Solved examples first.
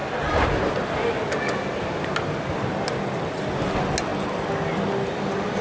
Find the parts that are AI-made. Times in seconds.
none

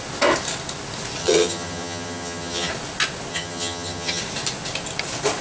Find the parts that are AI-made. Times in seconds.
1.2-2.7; 3.3-4.2

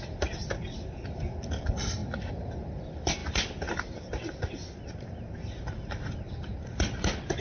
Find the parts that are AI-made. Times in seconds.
none

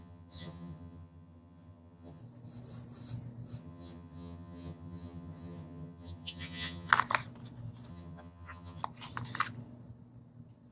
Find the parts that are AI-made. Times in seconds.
0.0-2.2; 3.6-6.9; 7.9-8.8